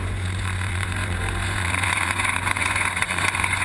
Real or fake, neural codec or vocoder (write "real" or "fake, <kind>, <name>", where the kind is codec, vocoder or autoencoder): fake, vocoder, Vocos